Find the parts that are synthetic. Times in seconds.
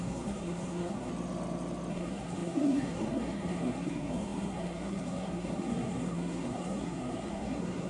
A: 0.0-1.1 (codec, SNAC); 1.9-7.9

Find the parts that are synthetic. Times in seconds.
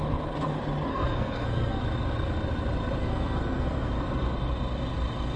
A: 0.9-1.8 (codec, SNAC); 3.0-3.9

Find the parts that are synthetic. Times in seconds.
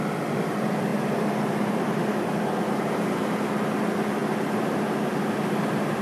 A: none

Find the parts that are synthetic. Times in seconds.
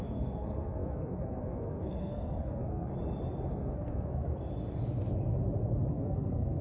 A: 0.0-2.9 (codec, SNAC); 3.5-4.3; 5.9-6.6